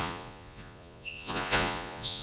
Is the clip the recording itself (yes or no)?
no